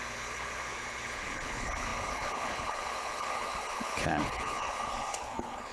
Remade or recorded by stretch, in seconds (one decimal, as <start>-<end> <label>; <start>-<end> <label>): 0.0-5.7 remade